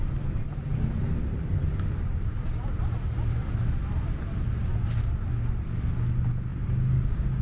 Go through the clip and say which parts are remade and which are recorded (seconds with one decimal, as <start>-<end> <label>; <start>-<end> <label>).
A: 0.0-7.4 recorded